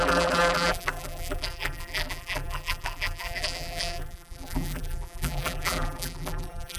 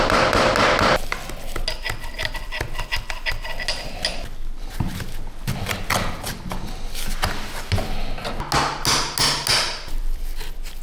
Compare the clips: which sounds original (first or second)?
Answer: second